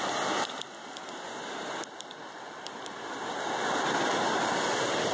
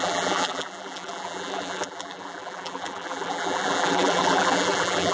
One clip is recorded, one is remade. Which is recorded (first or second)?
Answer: first